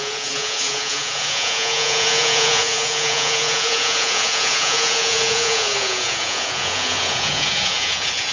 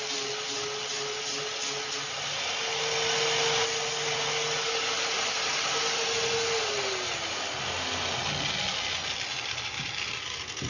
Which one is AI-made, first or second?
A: first